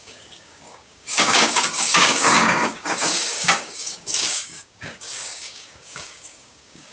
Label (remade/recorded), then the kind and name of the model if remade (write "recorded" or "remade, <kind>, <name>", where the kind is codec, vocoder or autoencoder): remade, codec, DAC